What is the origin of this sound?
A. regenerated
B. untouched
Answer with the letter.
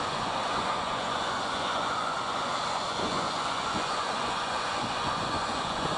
A